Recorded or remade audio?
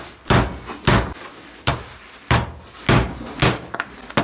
recorded